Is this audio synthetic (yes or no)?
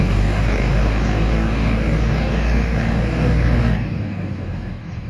yes